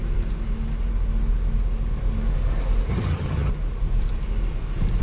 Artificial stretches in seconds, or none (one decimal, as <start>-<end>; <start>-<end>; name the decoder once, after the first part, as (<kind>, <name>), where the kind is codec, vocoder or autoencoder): 2.9-3.5 (vocoder, HiFi-GAN)